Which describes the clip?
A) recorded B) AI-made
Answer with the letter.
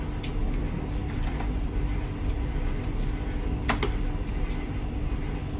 A